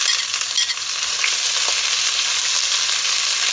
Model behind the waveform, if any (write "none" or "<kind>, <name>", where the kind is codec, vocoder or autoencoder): none